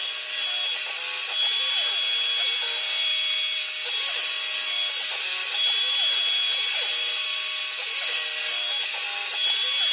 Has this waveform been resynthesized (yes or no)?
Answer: no